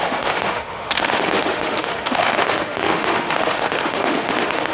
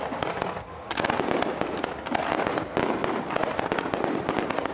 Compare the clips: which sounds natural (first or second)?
second